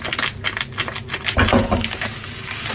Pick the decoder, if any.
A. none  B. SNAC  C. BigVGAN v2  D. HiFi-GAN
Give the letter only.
A